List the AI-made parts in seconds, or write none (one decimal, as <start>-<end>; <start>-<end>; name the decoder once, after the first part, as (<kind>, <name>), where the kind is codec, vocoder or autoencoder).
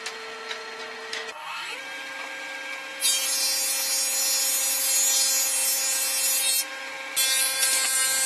none